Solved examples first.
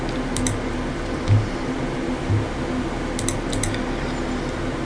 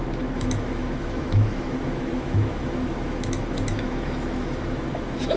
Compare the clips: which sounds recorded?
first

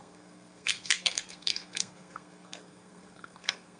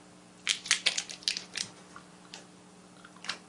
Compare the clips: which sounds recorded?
second